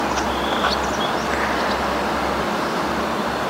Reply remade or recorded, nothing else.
recorded